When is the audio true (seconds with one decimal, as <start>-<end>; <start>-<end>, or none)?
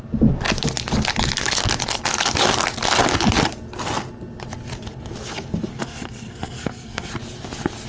0.0-5.7; 7.1-7.9